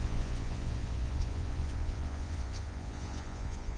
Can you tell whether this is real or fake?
fake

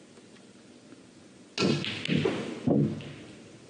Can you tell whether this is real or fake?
real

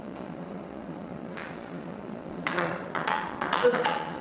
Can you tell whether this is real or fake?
fake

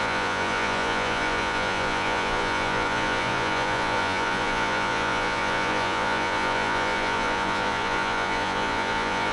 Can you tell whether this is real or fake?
fake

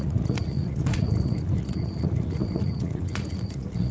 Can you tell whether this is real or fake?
fake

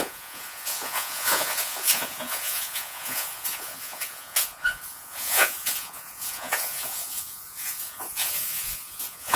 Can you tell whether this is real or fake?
fake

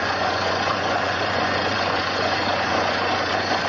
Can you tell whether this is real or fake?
fake